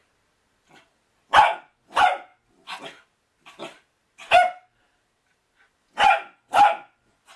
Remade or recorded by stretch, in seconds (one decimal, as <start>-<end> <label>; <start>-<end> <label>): 0.0-1.6 recorded; 1.6-2.3 remade; 2.3-5.8 recorded; 5.8-7.4 remade